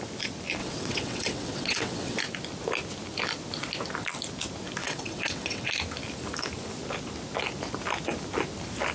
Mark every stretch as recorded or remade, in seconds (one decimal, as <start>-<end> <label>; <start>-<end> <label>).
0.0-0.6 recorded; 0.6-2.2 remade; 2.2-4.8 recorded; 4.8-5.7 remade; 5.7-8.9 recorded